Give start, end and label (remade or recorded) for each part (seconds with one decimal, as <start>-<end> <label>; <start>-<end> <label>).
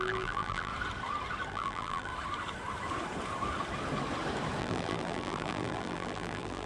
0.0-0.7 remade; 0.7-1.5 recorded; 1.5-2.1 remade; 2.1-4.6 recorded; 4.6-6.7 remade